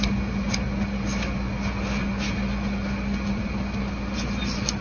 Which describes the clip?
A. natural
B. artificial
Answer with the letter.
A